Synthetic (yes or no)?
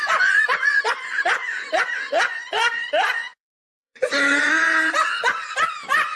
yes